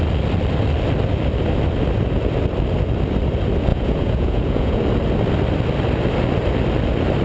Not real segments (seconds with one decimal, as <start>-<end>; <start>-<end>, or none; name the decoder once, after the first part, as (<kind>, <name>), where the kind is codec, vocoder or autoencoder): 3.7-4.8 (vocoder, Vocos)